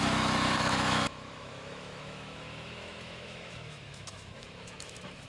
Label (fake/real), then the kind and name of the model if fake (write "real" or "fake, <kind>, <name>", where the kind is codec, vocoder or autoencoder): fake, autoencoder, DAC-VAE